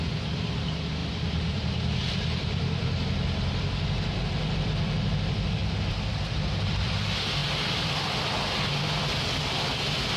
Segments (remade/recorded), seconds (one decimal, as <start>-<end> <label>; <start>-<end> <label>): 0.0-5.6 remade; 5.6-6.7 recorded; 6.7-7.4 remade; 7.4-10.2 recorded